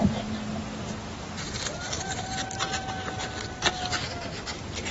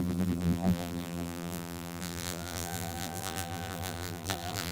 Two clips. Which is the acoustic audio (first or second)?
first